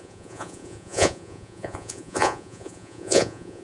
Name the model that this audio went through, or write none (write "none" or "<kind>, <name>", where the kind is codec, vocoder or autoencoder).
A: vocoder, Vocos